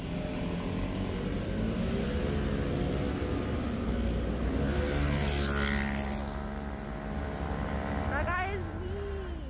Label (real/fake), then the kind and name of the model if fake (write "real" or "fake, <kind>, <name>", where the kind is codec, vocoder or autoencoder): real